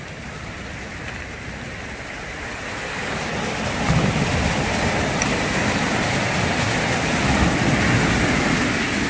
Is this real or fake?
real